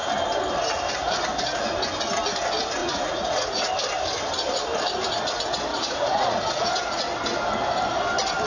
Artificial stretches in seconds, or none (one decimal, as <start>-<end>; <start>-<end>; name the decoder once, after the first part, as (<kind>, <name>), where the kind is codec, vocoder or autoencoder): 2.8-3.7 (vocoder, Vocos); 5.7-7.0